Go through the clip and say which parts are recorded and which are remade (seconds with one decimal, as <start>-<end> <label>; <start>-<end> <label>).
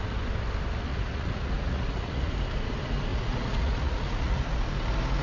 0.0-0.9 recorded; 0.9-2.3 remade; 2.3-3.1 recorded; 3.1-4.4 remade; 4.4-5.2 recorded